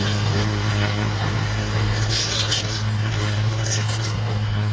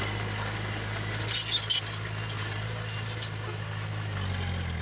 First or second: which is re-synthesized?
first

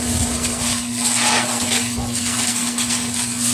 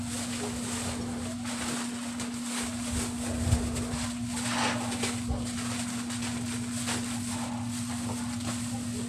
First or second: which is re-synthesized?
first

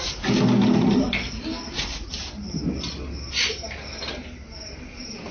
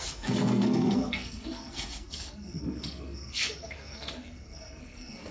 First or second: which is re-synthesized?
second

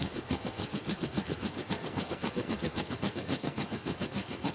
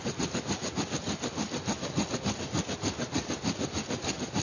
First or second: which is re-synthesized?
first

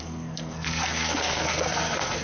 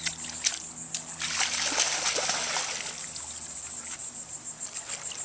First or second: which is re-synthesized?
first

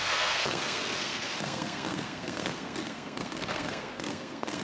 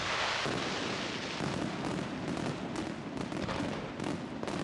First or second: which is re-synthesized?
first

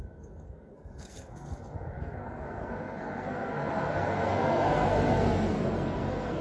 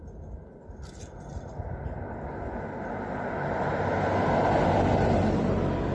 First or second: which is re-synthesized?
first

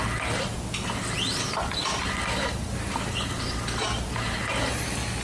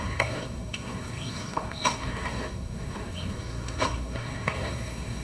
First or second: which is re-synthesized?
second